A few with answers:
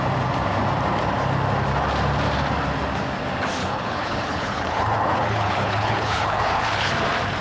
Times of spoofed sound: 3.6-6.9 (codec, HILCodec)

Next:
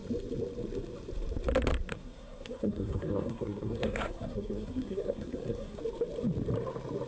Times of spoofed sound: 1.9-5.8 (codec, SNAC)